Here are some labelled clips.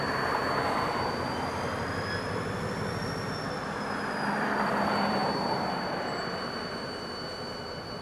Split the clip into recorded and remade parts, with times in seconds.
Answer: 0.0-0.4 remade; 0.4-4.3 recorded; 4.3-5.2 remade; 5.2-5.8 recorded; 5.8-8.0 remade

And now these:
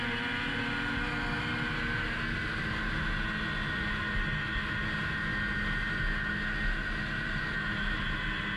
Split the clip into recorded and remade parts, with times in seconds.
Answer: 0.0-6.8 recorded; 6.8-7.4 remade; 7.4-8.6 recorded

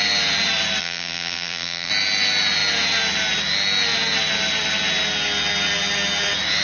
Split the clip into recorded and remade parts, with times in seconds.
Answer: 0.0-0.8 recorded; 0.8-1.9 remade; 1.9-6.6 recorded